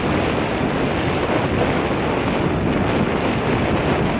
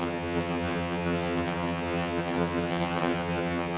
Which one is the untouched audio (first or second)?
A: first